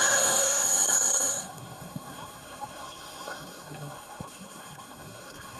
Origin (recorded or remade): remade